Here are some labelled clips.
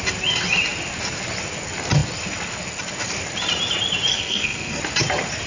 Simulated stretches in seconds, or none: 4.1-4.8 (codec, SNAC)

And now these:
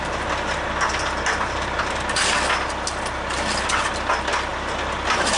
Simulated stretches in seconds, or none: none